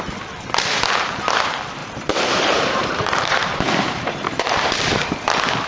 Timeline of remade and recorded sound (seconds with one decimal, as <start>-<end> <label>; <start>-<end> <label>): 0.0-1.8 recorded; 1.8-5.1 remade; 5.1-5.7 recorded